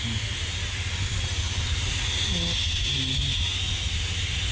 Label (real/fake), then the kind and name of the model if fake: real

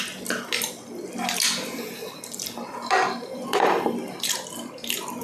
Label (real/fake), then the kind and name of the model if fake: real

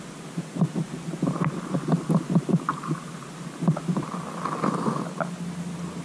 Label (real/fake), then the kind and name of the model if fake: real